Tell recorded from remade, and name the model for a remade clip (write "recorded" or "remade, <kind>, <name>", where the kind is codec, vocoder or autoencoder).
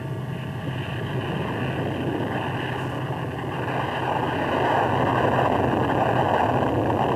recorded